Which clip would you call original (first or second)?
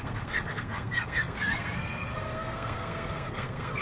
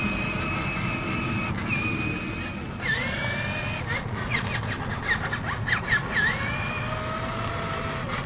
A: second